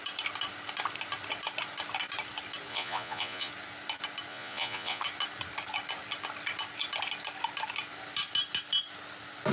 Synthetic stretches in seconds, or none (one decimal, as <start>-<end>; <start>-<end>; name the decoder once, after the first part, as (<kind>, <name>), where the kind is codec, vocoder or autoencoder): 2.7-3.5 (vocoder, Vocos); 4.3-5.0